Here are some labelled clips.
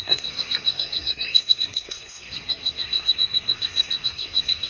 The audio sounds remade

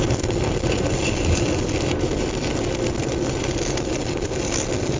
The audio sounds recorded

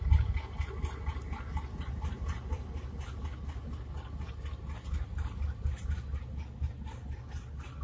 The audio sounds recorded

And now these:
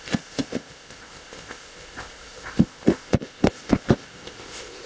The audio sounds remade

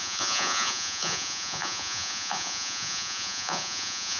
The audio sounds remade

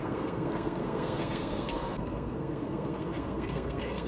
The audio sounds remade